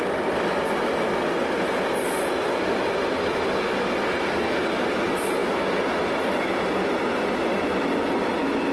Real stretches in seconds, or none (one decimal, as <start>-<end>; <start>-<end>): 0.0-8.7